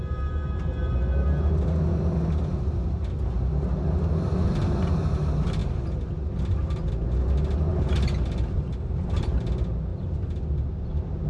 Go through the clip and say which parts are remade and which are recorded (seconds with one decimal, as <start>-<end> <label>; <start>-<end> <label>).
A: 0.0-11.3 recorded